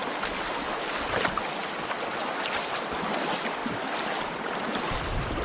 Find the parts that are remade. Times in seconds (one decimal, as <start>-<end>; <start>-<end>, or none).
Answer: none